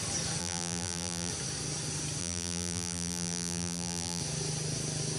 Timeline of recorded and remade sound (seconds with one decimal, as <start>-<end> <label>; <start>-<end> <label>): 0.0-0.4 recorded; 0.4-1.3 remade; 1.3-2.2 recorded; 2.2-4.2 remade; 4.2-5.2 recorded